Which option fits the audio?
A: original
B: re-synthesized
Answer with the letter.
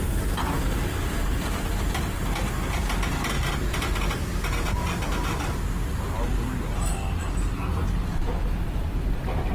A